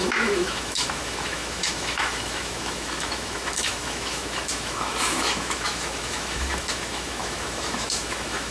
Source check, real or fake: fake